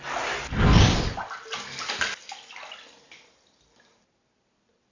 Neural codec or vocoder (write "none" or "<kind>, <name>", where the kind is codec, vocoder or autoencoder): none